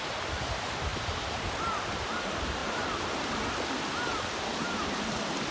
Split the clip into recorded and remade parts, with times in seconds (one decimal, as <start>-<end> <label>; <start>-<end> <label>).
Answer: 0.0-0.9 recorded; 0.9-1.5 remade; 1.5-4.1 recorded; 4.1-4.8 remade; 4.8-5.5 recorded